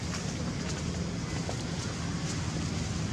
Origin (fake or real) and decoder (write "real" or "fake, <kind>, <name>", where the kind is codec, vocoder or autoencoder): real